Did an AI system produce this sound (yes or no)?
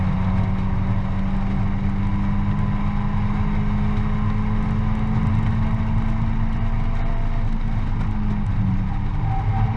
no